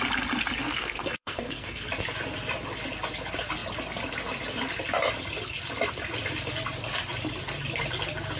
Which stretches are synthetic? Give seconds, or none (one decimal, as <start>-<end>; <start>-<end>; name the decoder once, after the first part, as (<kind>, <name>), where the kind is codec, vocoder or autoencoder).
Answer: 0.6-1.9 (codec, SNAC)